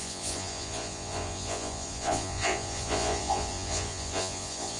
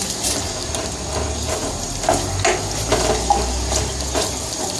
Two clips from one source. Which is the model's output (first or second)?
first